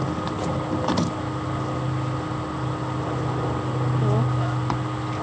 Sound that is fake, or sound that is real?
real